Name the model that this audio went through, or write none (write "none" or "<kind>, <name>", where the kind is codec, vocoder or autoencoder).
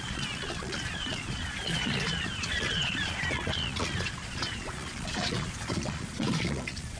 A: vocoder, Vocos